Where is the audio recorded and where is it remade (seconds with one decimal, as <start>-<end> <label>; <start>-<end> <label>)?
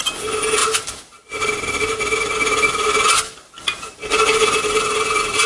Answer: 0.0-5.5 recorded